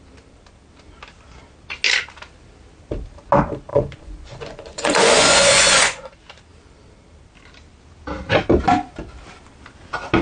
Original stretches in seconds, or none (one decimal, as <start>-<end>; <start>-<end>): 0.0-3.7; 6.1-10.2